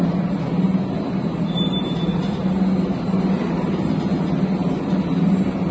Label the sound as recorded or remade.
recorded